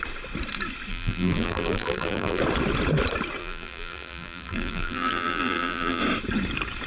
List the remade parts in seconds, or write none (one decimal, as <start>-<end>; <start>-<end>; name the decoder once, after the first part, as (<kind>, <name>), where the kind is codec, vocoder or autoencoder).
0.9-2.4 (vocoder, BigVGAN v2); 3.4-6.0